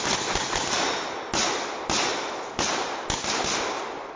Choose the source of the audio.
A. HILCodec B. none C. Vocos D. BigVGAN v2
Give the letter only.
B